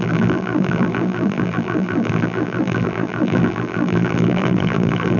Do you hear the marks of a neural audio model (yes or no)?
yes